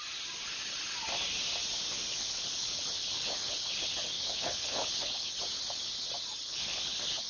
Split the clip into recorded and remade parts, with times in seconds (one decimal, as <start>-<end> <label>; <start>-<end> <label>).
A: 0.0-2.0 recorded; 2.0-5.3 remade; 5.3-6.4 recorded; 6.4-7.3 remade